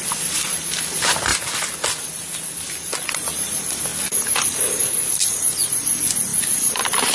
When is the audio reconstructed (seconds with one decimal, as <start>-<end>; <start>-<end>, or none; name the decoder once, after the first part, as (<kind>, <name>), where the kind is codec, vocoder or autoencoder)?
0.0-1.3 (vocoder, BigVGAN v2); 3.1-3.9; 4.7-7.1